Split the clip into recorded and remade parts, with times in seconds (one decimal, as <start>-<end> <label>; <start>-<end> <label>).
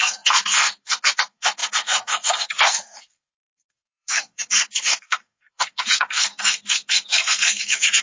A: 0.0-8.0 remade